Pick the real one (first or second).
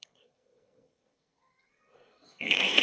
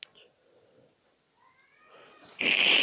second